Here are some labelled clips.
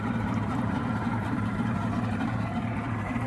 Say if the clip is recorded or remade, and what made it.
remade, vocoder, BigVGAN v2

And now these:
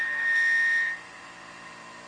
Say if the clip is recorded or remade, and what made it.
remade, vocoder, BigVGAN v2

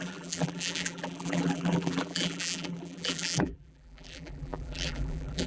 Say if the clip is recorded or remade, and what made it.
remade, vocoder, BigVGAN v2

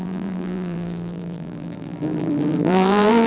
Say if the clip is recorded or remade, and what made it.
remade, vocoder, BigVGAN v2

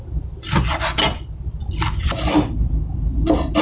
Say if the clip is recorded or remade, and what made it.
remade, vocoder, BigVGAN v2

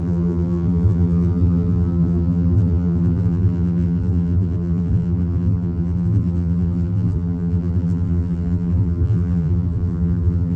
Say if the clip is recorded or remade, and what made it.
remade, vocoder, BigVGAN v2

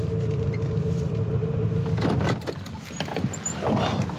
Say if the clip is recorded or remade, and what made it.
recorded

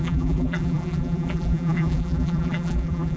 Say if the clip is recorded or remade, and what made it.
remade, vocoder, BigVGAN v2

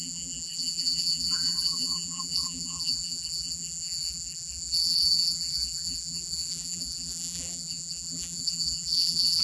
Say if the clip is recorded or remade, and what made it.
remade, vocoder, BigVGAN v2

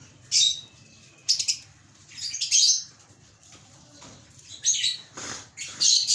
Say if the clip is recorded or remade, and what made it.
remade, vocoder, BigVGAN v2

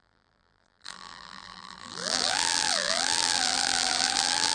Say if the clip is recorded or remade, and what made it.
remade, vocoder, BigVGAN v2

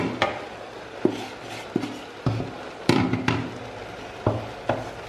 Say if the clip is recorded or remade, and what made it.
recorded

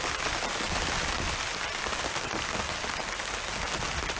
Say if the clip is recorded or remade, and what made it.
recorded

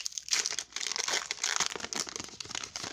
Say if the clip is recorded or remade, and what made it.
recorded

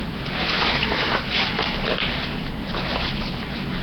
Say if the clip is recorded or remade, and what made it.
recorded